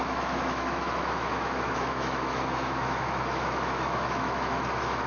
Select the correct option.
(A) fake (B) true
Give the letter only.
A